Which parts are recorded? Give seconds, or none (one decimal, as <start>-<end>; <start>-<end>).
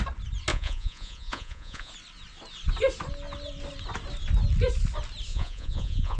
0.0-0.5; 1.9-5.3